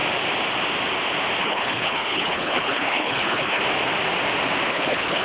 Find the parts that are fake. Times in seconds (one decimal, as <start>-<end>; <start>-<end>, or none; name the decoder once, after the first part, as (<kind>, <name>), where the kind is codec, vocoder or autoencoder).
1.4-3.6 (codec, HILCodec); 4.7-5.2